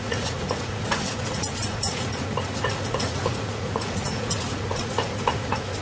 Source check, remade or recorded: remade